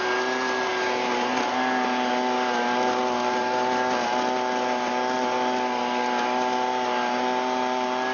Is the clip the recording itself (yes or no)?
yes